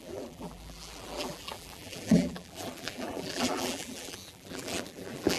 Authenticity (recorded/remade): remade